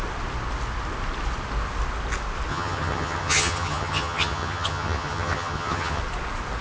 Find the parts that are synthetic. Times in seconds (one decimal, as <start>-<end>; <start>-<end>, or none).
2.5-6.0